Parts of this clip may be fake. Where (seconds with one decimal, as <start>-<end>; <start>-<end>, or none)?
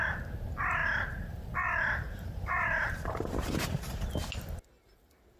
0.8-4.0